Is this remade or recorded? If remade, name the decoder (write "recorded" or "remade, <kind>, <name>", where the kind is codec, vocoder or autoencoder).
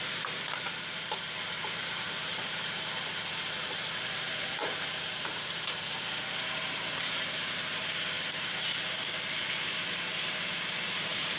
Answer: remade, vocoder, BigVGAN v2